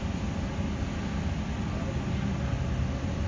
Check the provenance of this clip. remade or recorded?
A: recorded